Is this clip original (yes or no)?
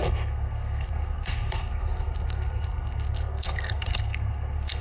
no